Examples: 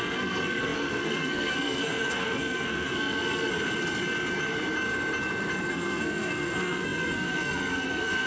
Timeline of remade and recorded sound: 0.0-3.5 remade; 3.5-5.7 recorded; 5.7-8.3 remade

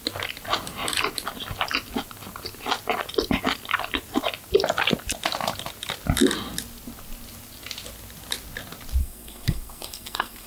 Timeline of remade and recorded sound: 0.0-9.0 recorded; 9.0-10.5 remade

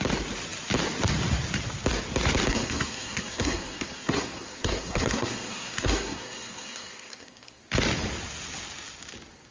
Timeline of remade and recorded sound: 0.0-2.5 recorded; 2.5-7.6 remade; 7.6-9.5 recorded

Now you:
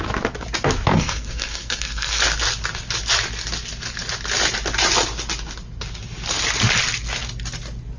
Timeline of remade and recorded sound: 0.0-0.9 recorded; 0.9-2.2 remade; 2.2-8.0 recorded

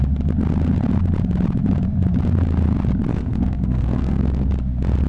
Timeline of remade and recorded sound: 0.0-3.1 recorded; 3.1-4.5 remade; 4.5-5.1 recorded

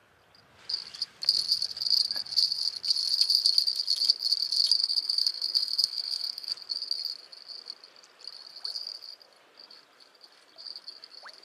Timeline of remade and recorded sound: 0.0-4.8 recorded; 4.8-6.5 remade; 6.5-11.4 recorded

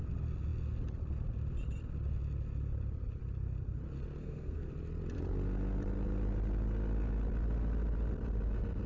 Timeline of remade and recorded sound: 0.0-4.2 recorded; 4.2-4.7 remade; 4.7-8.9 recorded

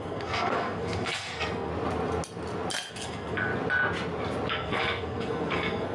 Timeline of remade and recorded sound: 0.0-1.7 remade; 1.7-2.9 recorded; 2.9-3.5 remade; 3.5-4.5 recorded; 4.5-5.9 remade